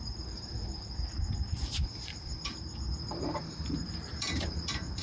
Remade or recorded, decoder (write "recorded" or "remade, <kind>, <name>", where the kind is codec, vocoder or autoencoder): remade, vocoder, BigVGAN v2